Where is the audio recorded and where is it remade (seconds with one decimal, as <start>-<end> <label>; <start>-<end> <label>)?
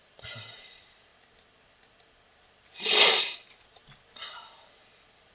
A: 0.0-1.1 remade; 1.1-3.2 recorded; 3.2-3.8 remade; 3.8-4.3 recorded; 4.3-5.3 remade